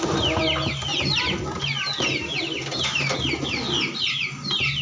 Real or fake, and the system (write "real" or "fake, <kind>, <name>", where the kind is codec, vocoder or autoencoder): real